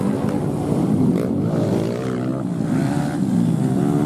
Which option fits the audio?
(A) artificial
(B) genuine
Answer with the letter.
B